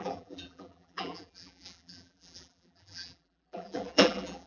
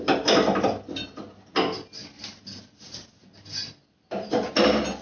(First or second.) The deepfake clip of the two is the first